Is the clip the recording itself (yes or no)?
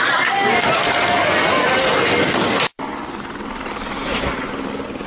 yes